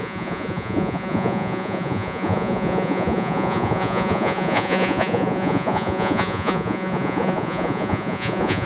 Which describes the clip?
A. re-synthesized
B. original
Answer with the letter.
A